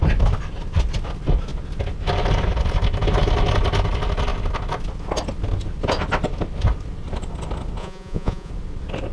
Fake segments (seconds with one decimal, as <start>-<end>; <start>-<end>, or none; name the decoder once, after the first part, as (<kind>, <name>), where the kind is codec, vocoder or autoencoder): 7.8-8.5 (vocoder, Vocos)